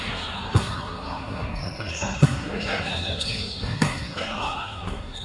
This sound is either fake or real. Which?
fake